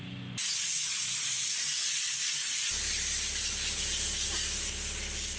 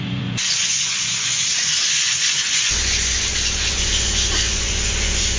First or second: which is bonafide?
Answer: first